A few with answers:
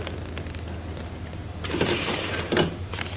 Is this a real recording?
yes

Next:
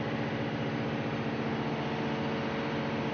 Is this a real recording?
yes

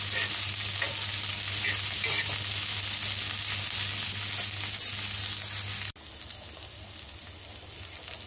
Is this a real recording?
yes